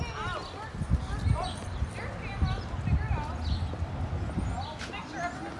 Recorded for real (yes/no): yes